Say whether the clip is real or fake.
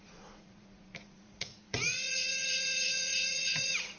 fake